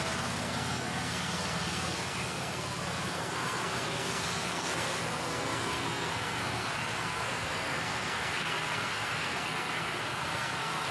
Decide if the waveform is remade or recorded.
remade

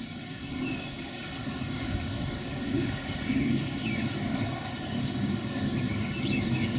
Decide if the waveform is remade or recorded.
remade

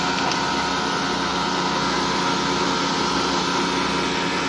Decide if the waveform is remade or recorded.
recorded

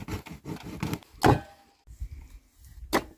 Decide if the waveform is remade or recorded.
recorded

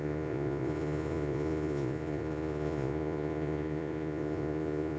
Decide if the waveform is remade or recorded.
remade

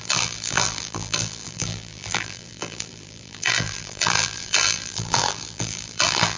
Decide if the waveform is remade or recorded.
remade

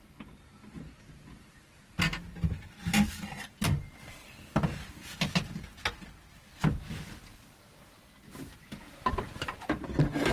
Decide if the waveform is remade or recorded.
recorded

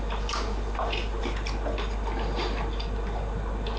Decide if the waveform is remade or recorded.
recorded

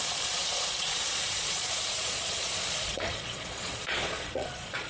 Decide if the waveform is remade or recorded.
remade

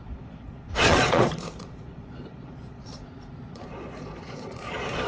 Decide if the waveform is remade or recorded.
remade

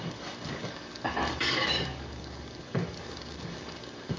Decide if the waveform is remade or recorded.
remade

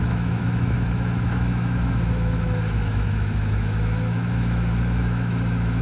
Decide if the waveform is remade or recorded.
remade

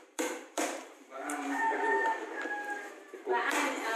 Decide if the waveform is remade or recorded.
remade